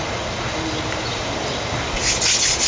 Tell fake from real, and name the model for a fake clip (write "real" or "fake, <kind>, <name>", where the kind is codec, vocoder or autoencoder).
real